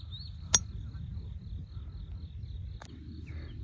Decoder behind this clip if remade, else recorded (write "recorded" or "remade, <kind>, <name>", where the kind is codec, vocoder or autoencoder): recorded